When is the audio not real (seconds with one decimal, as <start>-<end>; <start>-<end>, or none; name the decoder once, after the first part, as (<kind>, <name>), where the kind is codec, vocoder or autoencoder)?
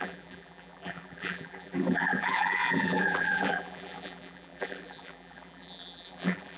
0.0-6.6 (vocoder, BigVGAN v2)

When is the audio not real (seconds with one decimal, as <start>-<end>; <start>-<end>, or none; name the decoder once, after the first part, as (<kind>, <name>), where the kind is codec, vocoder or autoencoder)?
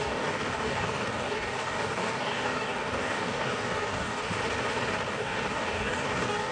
0.0-4.4 (codec, DAC); 5.1-6.5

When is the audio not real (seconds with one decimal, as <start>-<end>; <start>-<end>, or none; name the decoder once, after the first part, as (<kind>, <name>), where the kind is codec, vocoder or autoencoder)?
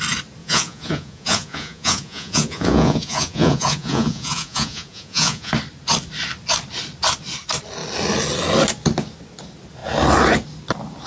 0.4-5.5 (vocoder, Vocos)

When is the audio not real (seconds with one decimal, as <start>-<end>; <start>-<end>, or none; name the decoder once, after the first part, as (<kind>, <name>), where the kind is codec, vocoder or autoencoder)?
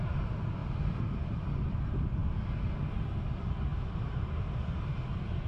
3.7-4.4 (vocoder, BigVGAN v2)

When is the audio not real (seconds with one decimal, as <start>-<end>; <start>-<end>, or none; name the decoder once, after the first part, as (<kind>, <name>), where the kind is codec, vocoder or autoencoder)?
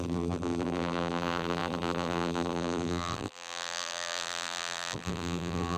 0.0-5.8 (vocoder, BigVGAN v2)